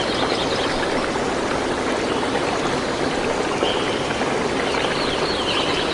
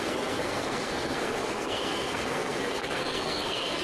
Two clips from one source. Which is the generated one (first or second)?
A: second